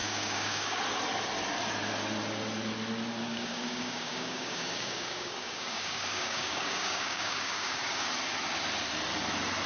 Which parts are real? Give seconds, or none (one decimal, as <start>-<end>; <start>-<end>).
0.8-3.3; 8.1-9.7